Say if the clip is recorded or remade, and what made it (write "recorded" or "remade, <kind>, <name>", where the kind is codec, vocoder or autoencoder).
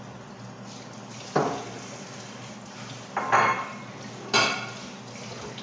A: recorded